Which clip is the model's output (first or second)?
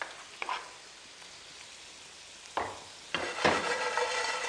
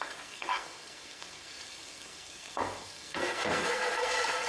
second